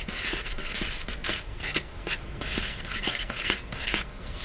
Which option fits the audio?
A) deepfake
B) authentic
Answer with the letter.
A